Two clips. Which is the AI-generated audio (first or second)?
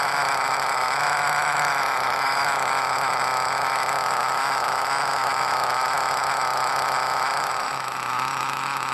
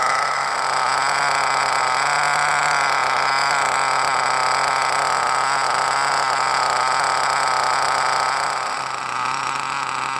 first